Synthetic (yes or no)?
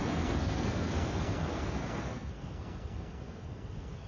yes